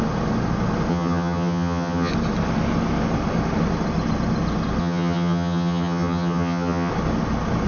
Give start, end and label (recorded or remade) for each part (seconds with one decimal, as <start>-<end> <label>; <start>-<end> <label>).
0.0-0.9 recorded; 0.9-2.1 remade; 2.1-4.8 recorded; 4.8-6.9 remade; 6.9-7.7 recorded